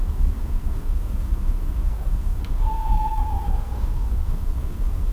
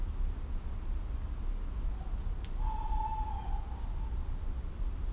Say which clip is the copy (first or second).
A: first